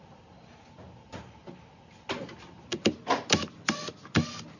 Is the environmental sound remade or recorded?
recorded